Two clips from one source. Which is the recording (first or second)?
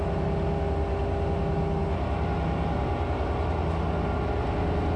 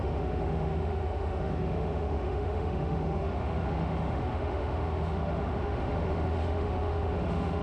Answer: first